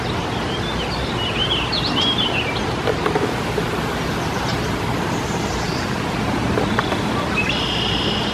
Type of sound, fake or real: real